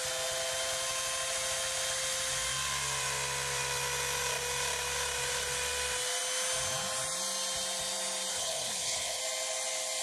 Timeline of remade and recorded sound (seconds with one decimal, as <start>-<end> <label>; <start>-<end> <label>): 0.0-8.3 recorded; 8.3-9.2 remade; 9.2-10.0 recorded